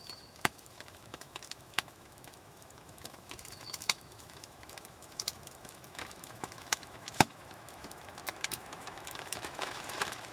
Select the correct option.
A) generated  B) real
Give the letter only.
A